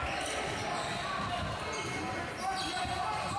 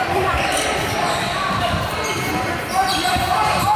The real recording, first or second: first